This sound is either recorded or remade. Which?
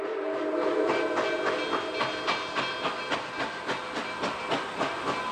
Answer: recorded